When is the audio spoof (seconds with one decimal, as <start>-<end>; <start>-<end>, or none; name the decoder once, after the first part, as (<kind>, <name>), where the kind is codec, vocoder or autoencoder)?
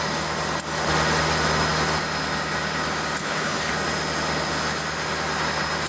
3.2-3.7 (codec, HILCodec)